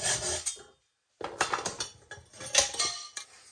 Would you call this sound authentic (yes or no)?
yes